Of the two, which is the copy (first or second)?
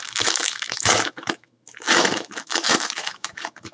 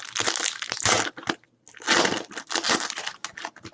first